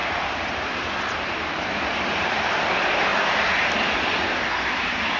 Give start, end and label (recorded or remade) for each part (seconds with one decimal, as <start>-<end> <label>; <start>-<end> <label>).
0.0-0.7 remade; 0.7-5.2 recorded